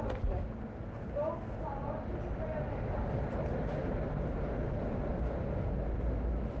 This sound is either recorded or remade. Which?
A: recorded